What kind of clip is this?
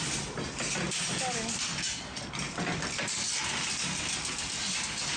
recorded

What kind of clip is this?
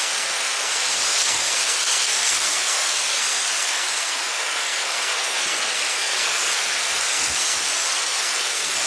remade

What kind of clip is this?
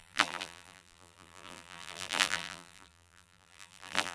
remade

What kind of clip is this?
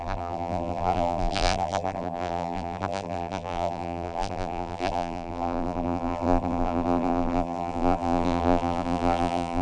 remade